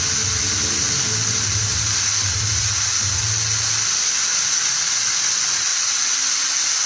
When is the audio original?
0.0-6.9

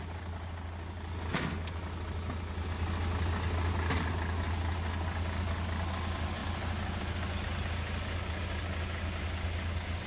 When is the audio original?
0.0-10.1

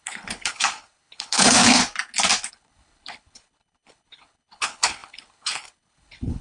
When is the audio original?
1.8-2.5

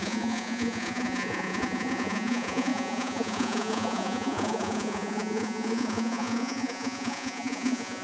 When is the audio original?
none

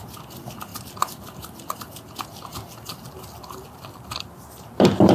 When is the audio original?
0.0-0.7; 1.4-5.1